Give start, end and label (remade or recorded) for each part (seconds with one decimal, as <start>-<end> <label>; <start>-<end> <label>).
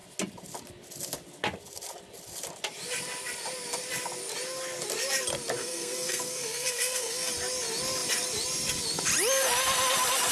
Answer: 0.0-5.6 recorded; 5.6-7.3 remade; 7.3-10.3 recorded